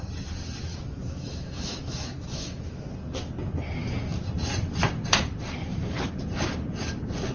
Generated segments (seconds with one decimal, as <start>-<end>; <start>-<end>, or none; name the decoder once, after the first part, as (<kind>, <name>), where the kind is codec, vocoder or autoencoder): 0.7-2.9 (autoencoder, DAC-VAE)

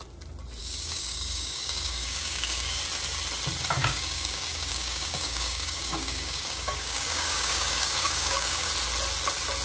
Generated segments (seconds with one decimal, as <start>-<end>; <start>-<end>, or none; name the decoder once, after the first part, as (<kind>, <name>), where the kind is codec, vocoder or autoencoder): 0.6-2.8 (codec, DAC); 3.8-8.7

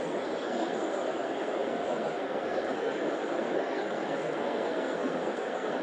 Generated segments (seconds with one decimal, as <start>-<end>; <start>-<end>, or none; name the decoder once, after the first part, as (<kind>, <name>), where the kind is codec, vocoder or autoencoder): 0.0-5.8 (codec, SNAC)

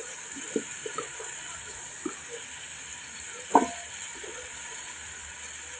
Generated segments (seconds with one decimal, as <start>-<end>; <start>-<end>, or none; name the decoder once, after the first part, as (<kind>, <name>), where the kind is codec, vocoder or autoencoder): 0.9-1.9 (vocoder, Vocos); 4.1-4.9